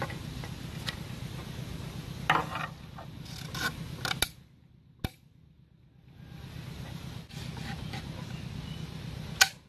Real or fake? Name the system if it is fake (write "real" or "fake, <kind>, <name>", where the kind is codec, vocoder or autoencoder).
real